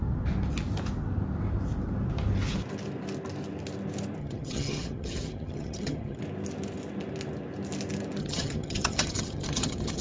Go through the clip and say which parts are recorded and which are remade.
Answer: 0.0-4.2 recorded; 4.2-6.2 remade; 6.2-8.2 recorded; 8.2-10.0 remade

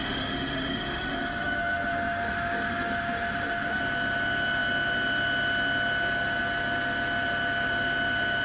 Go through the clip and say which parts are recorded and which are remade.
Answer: 0.0-3.8 remade; 3.8-8.4 recorded

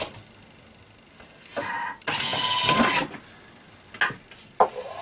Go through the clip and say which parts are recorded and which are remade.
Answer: 0.0-5.0 recorded